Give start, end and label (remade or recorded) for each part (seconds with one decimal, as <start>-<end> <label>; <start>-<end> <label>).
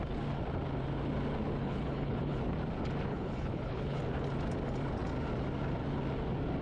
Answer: 0.0-1.6 recorded; 1.6-2.4 remade; 2.4-3.1 recorded; 3.1-4.0 remade; 4.0-6.6 recorded